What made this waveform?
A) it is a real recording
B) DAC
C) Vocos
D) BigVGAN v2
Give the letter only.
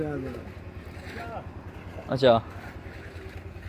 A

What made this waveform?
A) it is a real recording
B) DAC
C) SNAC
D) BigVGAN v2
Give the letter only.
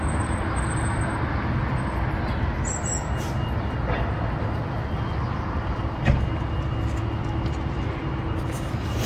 A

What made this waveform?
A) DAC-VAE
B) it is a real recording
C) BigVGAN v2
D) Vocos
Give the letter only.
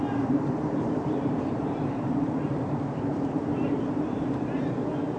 C